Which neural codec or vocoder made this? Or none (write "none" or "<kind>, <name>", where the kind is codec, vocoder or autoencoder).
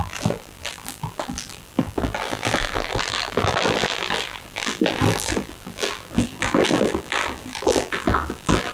vocoder, BigVGAN v2